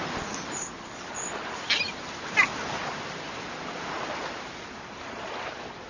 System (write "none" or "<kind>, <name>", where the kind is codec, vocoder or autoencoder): none